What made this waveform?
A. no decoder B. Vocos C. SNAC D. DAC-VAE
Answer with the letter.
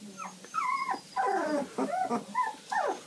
A